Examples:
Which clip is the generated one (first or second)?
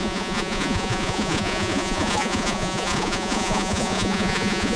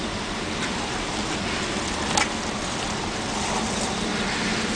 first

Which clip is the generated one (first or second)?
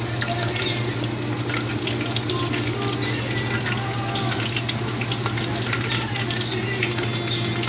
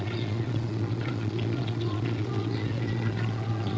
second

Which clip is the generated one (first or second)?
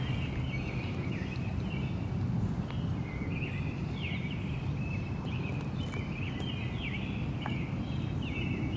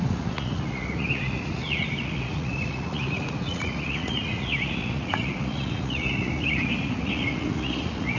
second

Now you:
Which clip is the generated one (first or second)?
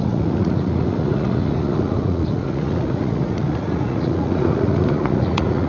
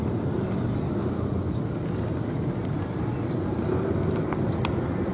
first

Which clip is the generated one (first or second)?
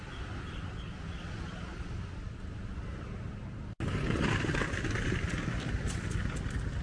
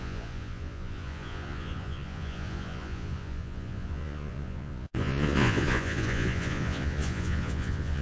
second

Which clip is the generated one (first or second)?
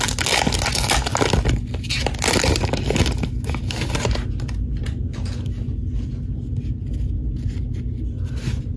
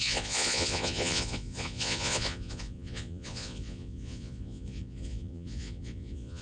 second